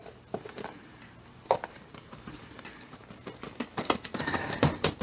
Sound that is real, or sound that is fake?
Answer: fake